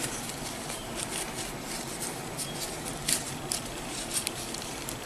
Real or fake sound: fake